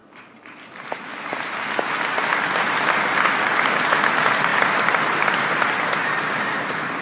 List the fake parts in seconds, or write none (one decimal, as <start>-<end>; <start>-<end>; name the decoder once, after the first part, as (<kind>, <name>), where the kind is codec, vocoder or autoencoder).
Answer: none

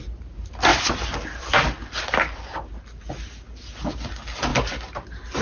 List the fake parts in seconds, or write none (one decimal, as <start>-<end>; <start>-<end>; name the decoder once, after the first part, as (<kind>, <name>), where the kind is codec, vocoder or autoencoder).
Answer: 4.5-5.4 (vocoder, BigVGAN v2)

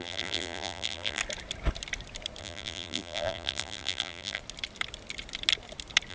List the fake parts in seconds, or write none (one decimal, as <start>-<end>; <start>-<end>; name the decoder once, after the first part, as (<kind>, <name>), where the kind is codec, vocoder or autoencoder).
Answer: 0.0-1.2 (vocoder, BigVGAN v2); 2.4-4.4